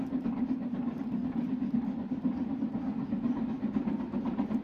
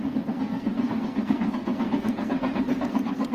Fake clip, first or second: second